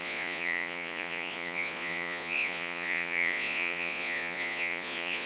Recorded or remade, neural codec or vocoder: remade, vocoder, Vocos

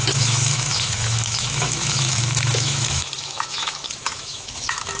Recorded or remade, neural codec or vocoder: remade, autoencoder, DAC-VAE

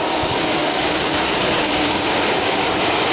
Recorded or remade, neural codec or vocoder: remade, codec, DAC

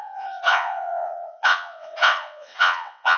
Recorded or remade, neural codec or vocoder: remade, vocoder, WaveNeXt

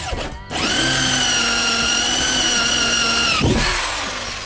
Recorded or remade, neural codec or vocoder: recorded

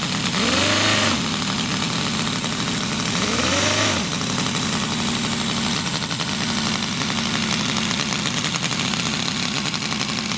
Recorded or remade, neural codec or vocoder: recorded